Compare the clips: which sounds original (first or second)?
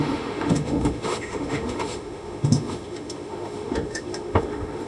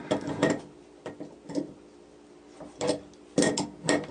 second